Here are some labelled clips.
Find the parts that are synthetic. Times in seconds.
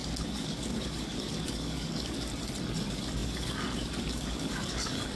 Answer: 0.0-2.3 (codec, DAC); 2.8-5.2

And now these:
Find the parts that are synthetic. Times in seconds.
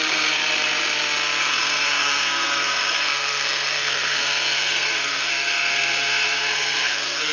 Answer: 0.0-0.4 (codec, SNAC); 1.4-7.3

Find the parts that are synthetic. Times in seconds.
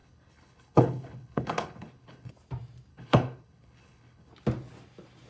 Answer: 0.0-2.3 (codec, HILCodec); 2.9-4.3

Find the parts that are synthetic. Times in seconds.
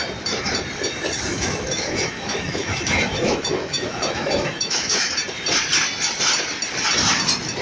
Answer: 1.3-5.1 (autoencoder, DAC-VAE)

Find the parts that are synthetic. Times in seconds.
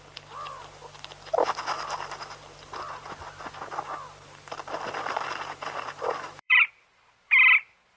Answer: 0.0-0.8 (vocoder, BigVGAN v2); 3.9-8.0